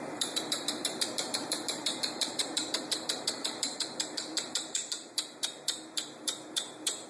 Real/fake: fake